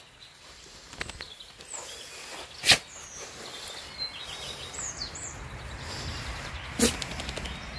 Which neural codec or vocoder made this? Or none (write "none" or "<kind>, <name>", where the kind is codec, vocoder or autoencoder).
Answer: none